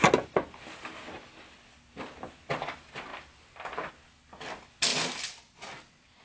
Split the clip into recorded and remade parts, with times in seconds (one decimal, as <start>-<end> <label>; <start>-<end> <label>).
0.0-6.2 recorded